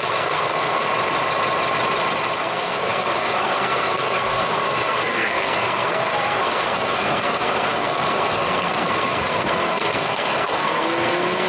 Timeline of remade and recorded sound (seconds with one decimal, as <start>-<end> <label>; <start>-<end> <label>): 0.0-0.9 remade; 0.9-2.4 recorded; 2.4-11.5 remade